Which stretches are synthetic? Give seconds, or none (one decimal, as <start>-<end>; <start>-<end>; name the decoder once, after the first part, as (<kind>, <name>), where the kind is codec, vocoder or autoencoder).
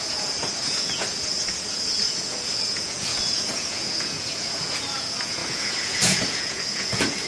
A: 0.0-7.3 (vocoder, Vocos)